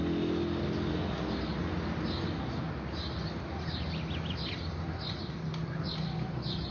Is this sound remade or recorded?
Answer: recorded